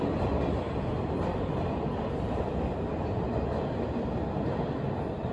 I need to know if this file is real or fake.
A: real